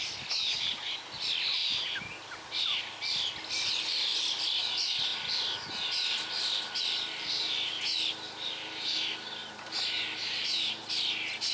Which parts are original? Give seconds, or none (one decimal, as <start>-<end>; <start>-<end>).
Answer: 0.0-9.4; 10.8-11.5